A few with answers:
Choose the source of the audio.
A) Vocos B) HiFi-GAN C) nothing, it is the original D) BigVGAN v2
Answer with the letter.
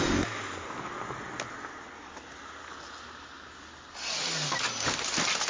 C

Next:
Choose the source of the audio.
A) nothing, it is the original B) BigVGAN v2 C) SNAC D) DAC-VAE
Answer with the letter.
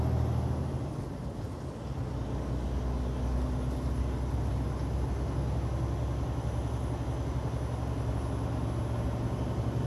A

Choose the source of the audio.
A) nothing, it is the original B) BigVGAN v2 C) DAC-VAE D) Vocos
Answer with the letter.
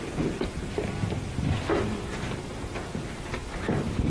A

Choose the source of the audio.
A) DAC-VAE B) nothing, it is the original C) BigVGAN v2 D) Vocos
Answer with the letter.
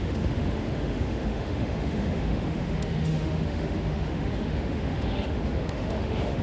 A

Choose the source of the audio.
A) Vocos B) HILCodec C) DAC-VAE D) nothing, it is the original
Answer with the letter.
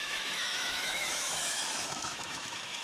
C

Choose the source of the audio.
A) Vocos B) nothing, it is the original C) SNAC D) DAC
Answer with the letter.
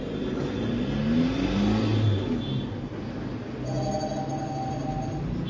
B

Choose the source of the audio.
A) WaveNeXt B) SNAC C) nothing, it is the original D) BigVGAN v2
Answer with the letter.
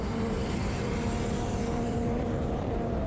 D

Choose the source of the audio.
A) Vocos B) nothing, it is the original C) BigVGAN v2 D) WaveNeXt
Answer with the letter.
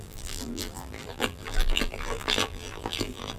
C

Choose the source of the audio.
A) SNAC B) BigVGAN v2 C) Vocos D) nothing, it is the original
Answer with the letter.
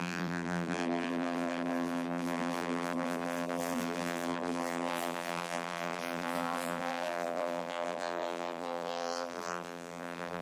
B